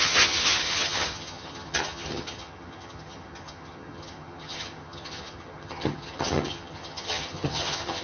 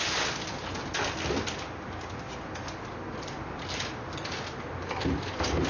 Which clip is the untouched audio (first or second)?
second